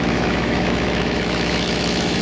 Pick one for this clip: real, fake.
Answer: fake